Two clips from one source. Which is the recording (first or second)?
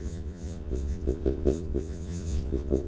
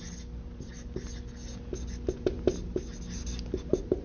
second